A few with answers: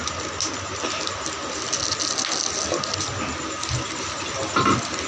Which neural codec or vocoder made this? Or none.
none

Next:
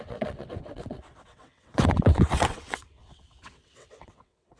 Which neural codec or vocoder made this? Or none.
vocoder, WaveNeXt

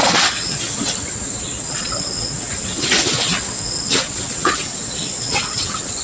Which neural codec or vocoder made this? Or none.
vocoder, WaveNeXt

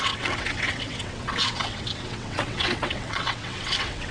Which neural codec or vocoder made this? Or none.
vocoder, WaveNeXt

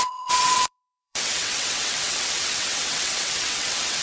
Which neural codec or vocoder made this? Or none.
vocoder, WaveNeXt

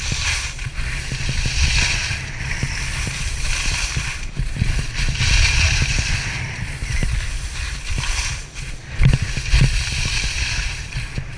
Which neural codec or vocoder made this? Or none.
none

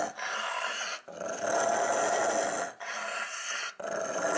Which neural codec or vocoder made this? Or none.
none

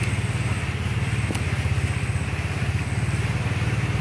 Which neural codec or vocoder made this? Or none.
none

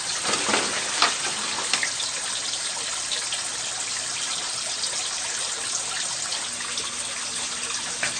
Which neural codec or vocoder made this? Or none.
none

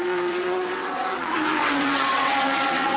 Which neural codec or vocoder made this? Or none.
vocoder, WaveNeXt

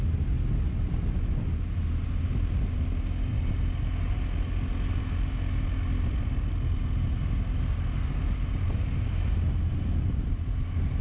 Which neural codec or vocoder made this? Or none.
none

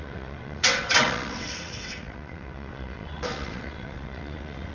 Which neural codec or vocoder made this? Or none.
vocoder, WaveNeXt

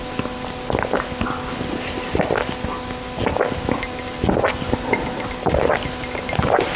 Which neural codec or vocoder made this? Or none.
none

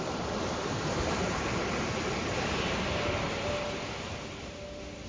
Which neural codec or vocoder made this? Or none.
none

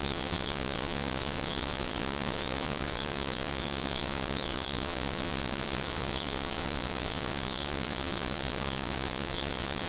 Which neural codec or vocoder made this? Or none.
vocoder, WaveNeXt